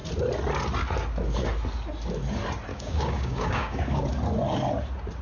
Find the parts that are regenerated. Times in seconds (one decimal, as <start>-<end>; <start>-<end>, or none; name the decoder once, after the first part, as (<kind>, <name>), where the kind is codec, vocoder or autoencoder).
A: 2.7-4.0 (codec, DAC)